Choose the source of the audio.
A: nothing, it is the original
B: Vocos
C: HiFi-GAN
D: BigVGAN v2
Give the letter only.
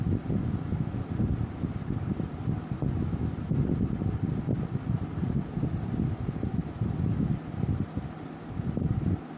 A